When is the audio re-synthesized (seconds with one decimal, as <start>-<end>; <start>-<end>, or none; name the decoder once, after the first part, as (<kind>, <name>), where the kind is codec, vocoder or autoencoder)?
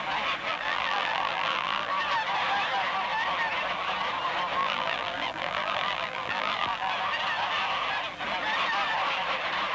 0.5-1.9 (vocoder, BigVGAN v2); 4.6-6.9